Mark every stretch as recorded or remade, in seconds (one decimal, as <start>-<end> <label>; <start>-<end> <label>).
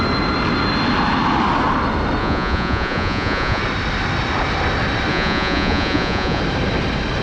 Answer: 0.0-2.2 recorded; 2.2-3.6 remade; 3.6-5.1 recorded; 5.1-6.4 remade; 6.4-7.2 recorded